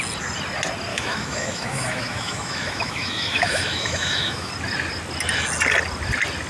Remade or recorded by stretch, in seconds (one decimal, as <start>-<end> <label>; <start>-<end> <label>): 0.0-0.9 recorded; 0.9-4.5 remade; 4.5-6.5 recorded